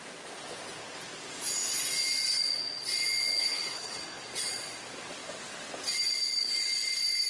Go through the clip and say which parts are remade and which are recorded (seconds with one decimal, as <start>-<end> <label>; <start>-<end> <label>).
0.0-3.4 recorded; 3.4-4.2 remade; 4.2-7.3 recorded